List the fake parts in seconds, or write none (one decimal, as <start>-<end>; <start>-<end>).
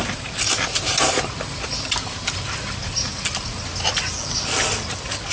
none